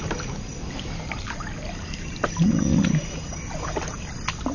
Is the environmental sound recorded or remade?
recorded